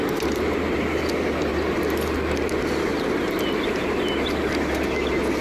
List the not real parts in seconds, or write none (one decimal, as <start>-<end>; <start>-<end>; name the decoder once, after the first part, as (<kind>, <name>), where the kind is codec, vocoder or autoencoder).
none